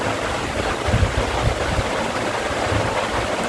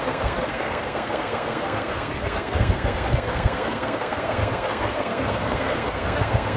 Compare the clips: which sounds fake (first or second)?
second